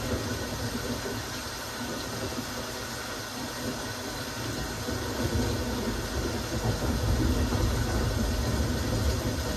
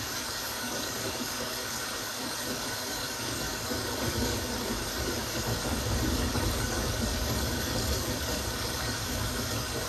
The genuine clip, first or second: first